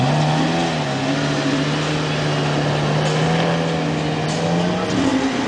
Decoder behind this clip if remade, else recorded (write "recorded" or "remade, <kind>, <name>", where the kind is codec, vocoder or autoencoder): recorded